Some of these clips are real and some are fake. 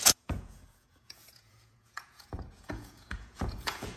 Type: fake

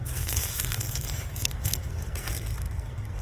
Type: fake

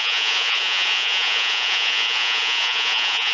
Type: fake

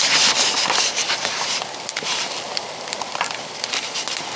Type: fake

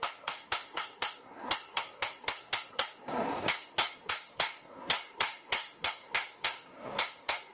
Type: fake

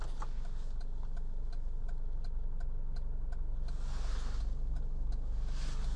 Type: real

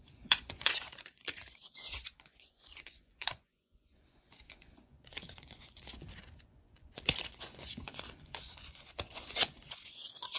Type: fake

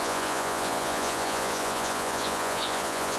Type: fake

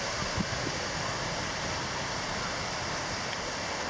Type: real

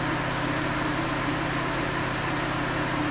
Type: real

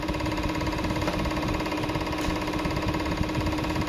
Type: real